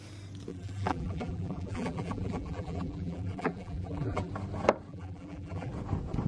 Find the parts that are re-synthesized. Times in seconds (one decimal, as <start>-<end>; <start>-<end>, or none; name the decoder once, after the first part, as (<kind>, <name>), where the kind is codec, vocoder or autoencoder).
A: 0.5-4.3 (vocoder, BigVGAN v2); 4.9-5.7